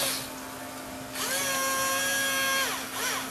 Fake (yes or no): no